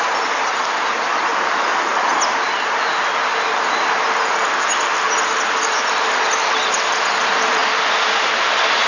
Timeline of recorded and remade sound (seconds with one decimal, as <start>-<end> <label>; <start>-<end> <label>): 0.0-8.9 recorded